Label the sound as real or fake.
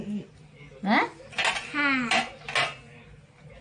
real